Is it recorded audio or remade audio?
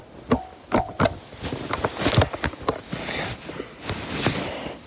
recorded